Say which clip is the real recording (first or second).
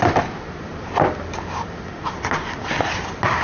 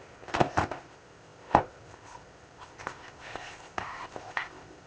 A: first